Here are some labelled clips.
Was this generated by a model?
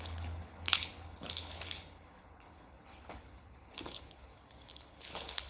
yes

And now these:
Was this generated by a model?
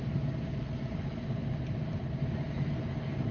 no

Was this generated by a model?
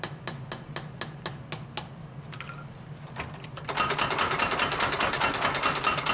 no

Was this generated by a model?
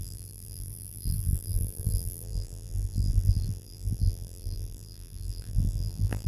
yes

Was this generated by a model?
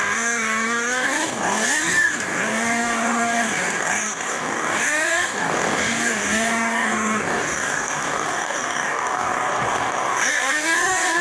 yes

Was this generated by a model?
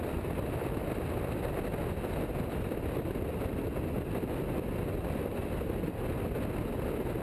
no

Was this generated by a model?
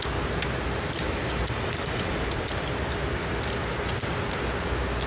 no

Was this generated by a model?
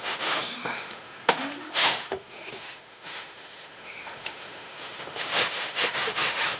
yes